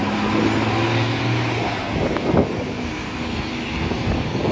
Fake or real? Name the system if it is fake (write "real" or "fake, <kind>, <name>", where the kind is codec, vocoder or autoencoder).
real